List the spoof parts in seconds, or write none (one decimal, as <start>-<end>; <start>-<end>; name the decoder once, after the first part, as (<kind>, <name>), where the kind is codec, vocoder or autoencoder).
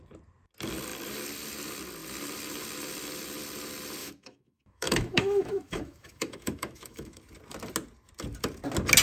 4.0-7.2 (autoencoder, DAC-VAE)